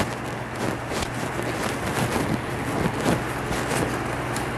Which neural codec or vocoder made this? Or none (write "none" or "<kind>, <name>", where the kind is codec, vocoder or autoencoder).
none